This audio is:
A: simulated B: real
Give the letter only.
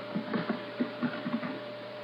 A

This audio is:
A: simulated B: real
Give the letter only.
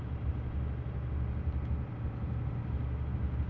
B